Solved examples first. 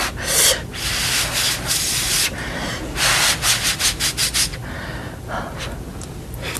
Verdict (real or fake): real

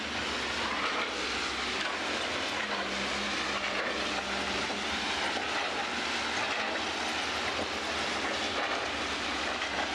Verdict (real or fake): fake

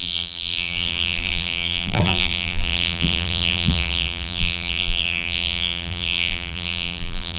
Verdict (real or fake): fake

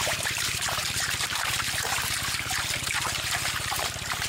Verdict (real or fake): fake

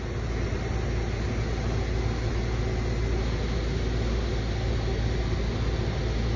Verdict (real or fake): real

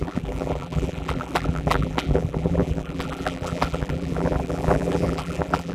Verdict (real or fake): fake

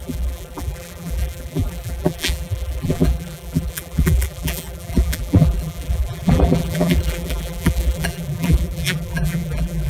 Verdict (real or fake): fake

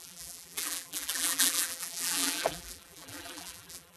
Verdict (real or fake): fake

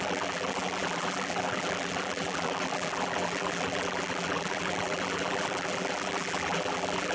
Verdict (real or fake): fake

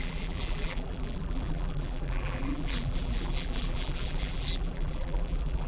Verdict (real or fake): fake